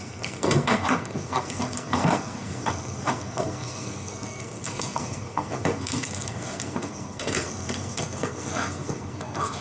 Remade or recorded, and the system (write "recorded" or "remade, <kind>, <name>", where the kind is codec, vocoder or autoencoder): remade, codec, SNAC